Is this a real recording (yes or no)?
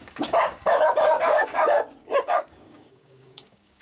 no